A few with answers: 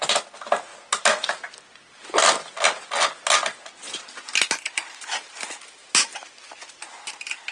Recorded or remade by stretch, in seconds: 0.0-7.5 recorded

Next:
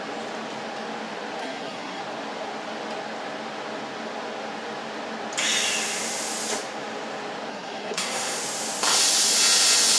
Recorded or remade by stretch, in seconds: 0.0-1.4 recorded; 1.4-2.0 remade; 2.0-7.5 recorded; 7.5-8.4 remade; 8.4-10.0 recorded